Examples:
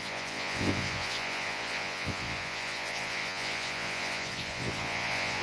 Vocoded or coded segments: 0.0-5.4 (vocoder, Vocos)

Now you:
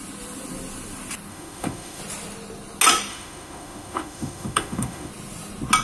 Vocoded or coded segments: 1.3-2.0 (autoencoder, DAC-VAE); 3.1-5.1